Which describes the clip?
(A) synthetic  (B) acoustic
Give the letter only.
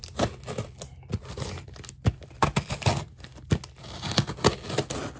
B